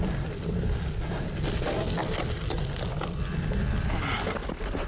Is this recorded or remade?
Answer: recorded